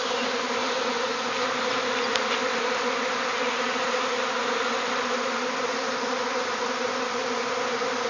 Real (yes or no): yes